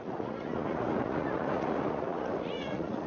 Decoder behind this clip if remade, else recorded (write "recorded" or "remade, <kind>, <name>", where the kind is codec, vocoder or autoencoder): remade, vocoder, Vocos